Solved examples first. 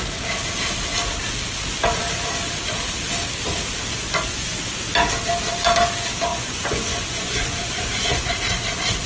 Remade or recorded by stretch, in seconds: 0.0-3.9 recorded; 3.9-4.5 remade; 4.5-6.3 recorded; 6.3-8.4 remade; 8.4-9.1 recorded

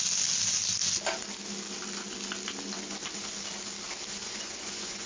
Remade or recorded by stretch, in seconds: 0.0-4.2 recorded; 4.2-5.1 remade

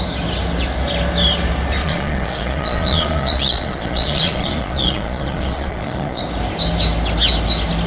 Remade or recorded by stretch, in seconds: 0.0-1.8 recorded; 1.8-6.2 remade; 6.2-7.9 recorded